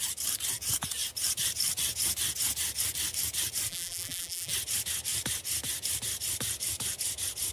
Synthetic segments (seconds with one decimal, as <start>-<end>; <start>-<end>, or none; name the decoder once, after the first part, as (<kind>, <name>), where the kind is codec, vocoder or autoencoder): 3.7-4.5 (vocoder, BigVGAN v2)